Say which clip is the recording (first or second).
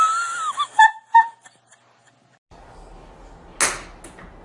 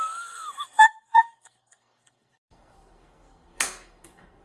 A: first